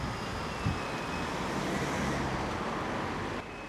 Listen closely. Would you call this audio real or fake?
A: real